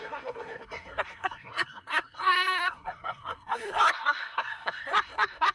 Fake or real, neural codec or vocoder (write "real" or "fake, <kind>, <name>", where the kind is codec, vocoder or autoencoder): fake, codec, SNAC